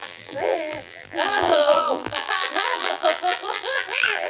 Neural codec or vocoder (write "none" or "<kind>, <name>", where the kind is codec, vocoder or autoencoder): vocoder, BigVGAN v2